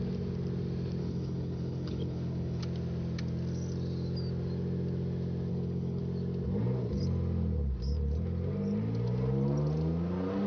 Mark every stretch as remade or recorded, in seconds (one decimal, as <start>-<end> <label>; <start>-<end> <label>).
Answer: 0.0-1.0 recorded; 1.0-2.6 remade; 2.6-5.5 recorded; 5.5-6.0 remade; 6.0-10.5 recorded